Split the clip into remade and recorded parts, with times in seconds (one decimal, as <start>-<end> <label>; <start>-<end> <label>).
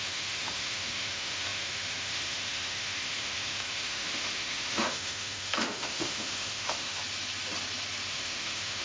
0.0-7.0 remade; 7.0-8.1 recorded; 8.1-8.8 remade